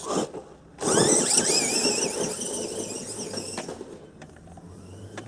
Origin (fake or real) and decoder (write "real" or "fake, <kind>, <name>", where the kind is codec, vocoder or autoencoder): real